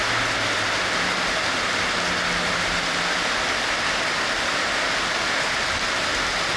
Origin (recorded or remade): recorded